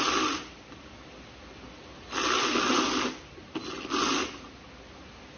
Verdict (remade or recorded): recorded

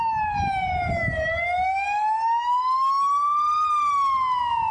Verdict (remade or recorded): recorded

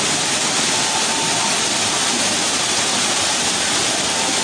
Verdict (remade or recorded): recorded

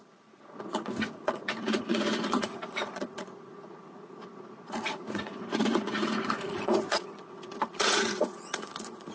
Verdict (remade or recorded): remade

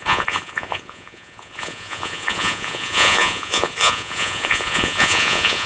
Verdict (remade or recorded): remade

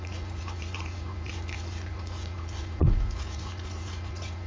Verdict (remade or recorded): remade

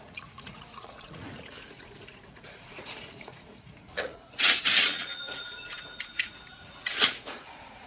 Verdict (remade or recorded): remade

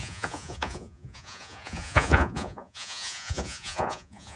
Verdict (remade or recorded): remade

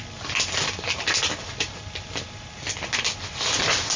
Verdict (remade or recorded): recorded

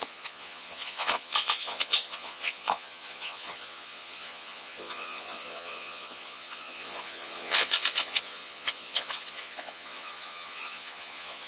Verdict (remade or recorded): remade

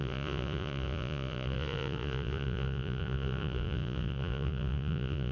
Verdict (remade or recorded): remade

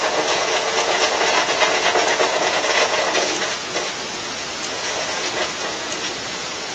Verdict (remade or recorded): remade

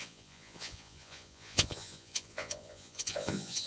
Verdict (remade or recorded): remade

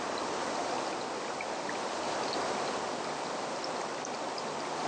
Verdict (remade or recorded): recorded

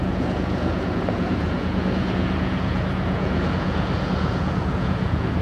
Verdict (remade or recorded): remade